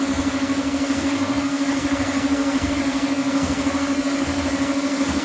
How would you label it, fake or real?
fake